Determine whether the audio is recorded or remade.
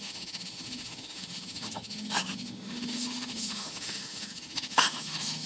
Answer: remade